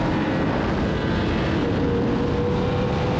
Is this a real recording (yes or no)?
yes